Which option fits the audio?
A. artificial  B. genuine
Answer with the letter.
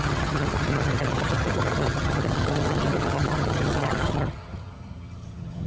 A